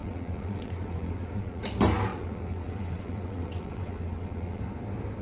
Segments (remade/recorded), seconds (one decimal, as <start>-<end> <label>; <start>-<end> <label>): 0.0-1.6 remade; 1.6-2.1 recorded; 2.1-4.6 remade; 4.6-5.2 recorded